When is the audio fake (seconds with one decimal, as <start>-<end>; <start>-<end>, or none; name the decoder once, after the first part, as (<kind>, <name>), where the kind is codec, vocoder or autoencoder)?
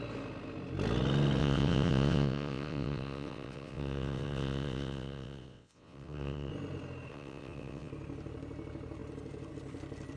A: 1.4-6.5 (vocoder, WaveNeXt); 7.1-7.9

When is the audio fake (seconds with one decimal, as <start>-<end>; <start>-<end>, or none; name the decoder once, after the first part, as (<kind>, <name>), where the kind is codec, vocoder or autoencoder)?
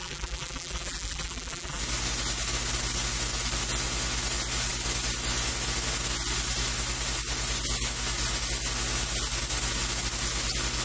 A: 0.0-1.8 (vocoder, BigVGAN v2)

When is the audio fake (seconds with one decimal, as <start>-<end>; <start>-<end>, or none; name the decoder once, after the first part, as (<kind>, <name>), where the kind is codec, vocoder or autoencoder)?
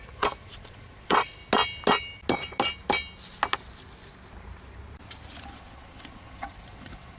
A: 0.0-1.4 (vocoder, Vocos); 5.5-7.2